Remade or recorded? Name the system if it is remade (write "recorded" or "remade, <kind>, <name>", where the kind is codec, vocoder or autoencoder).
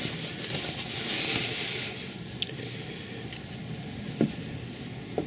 recorded